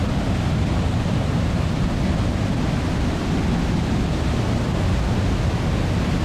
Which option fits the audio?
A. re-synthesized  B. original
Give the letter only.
B